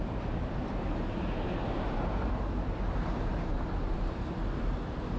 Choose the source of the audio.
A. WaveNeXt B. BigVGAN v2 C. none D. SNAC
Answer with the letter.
B